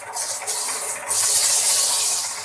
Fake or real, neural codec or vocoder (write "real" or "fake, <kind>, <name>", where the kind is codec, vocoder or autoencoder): real